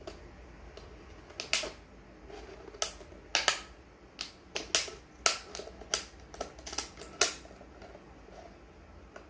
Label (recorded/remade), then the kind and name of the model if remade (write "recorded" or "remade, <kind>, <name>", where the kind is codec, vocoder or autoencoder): recorded